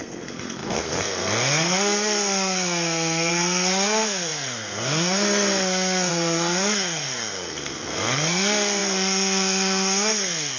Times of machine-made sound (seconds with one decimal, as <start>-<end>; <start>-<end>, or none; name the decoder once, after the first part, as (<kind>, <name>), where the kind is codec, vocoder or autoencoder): 0.0-10.6 (codec, SNAC)